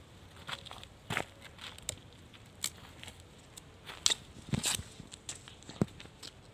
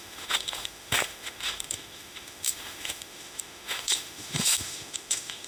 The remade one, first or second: second